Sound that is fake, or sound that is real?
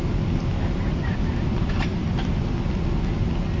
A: real